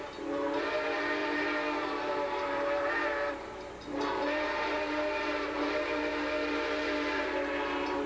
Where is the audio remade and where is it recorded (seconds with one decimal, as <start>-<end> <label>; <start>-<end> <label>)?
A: 0.0-1.2 recorded; 1.2-6.1 remade; 6.1-8.1 recorded